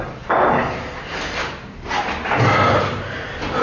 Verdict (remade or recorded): recorded